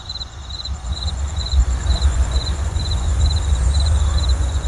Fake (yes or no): yes